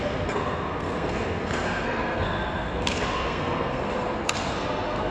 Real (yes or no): no